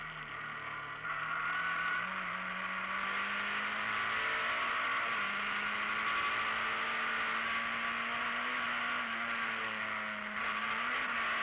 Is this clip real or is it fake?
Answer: real